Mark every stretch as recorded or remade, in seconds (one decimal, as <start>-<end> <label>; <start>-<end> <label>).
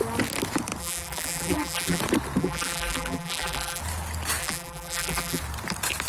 0.0-0.8 recorded; 0.8-2.0 remade; 2.0-2.4 recorded; 2.4-3.8 remade; 3.8-4.4 recorded; 4.4-5.4 remade; 5.4-6.1 recorded